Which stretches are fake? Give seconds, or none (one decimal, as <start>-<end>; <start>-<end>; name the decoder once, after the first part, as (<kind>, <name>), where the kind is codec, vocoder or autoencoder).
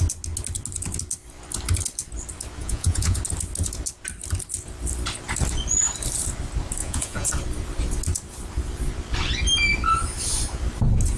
2.6-3.2 (vocoder, Vocos); 6.8-7.3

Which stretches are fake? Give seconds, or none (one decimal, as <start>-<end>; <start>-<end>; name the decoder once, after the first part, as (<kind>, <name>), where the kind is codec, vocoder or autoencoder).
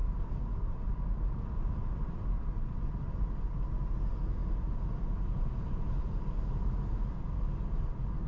none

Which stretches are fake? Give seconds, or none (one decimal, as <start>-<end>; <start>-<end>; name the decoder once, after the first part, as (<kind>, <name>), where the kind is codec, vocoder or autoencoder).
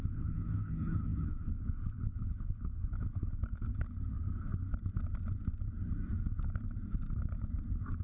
0.0-4.5 (codec, HILCodec)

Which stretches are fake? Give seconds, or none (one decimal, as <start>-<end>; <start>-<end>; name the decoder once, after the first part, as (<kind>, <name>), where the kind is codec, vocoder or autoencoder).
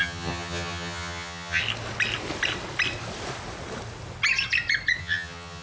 0.0-1.6 (vocoder, HiFi-GAN); 5.0-5.6